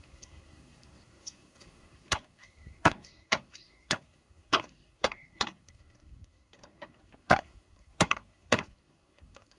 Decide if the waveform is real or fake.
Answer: fake